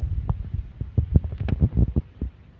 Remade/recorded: remade